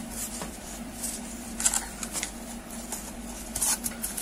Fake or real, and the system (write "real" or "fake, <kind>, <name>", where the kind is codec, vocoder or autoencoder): fake, vocoder, BigVGAN v2